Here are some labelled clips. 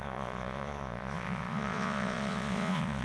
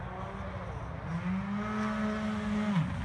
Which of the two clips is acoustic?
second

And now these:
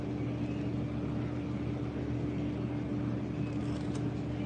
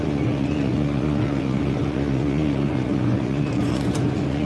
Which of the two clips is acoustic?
first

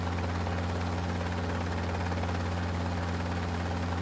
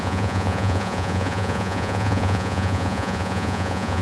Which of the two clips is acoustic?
first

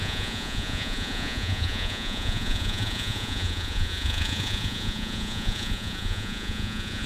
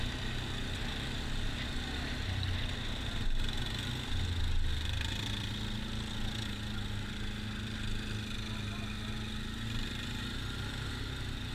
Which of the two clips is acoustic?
second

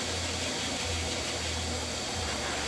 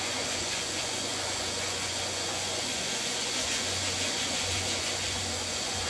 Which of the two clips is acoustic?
first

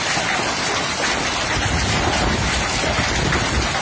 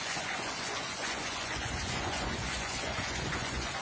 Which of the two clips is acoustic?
first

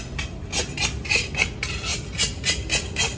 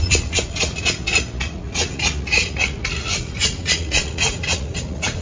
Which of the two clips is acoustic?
first